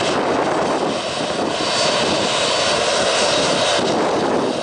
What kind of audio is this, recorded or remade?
recorded